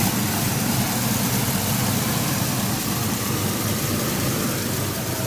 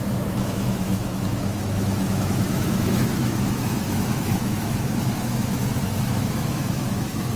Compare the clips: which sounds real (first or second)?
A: first